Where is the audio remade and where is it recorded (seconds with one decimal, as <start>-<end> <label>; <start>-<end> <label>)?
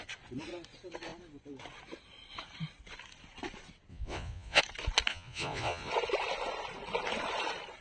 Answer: 0.0-3.9 recorded; 3.9-4.6 remade; 4.6-5.1 recorded; 5.1-5.9 remade; 5.9-7.8 recorded